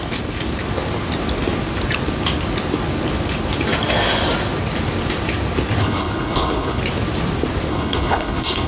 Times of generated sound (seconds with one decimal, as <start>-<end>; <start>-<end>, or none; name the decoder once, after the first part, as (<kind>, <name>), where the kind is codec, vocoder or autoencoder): 5.8-6.8 (codec, HILCodec); 7.7-8.7